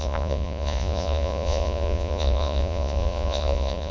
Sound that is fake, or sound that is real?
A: fake